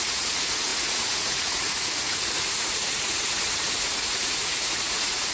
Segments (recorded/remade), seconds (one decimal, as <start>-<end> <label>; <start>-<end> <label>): 0.0-5.3 remade